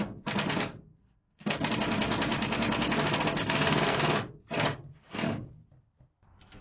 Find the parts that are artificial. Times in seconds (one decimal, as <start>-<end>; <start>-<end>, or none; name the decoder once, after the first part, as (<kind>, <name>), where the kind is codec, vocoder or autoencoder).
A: 0.9-1.7 (codec, SNAC); 3.4-4.0